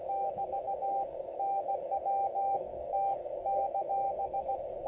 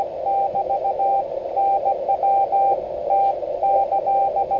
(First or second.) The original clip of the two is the second